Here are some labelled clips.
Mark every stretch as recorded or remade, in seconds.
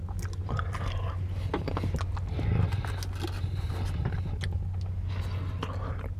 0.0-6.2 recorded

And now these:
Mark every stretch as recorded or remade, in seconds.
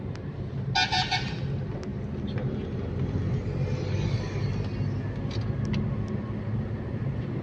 0.0-7.4 recorded